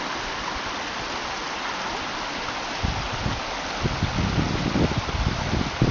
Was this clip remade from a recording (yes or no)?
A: no